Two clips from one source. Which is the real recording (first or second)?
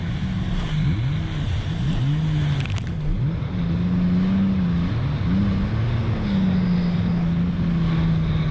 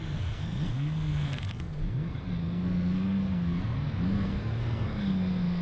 first